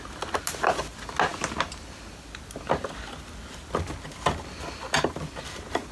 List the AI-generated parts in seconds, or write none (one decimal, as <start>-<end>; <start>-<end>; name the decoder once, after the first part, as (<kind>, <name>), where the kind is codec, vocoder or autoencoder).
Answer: none